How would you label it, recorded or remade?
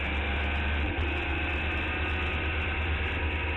recorded